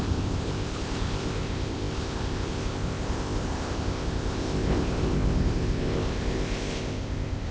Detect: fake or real fake